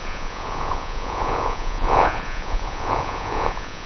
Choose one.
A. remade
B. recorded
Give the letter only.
A